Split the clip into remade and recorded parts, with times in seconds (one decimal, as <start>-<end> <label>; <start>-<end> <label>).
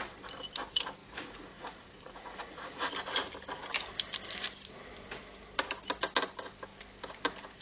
0.0-1.0 recorded; 1.0-2.9 remade; 2.9-7.6 recorded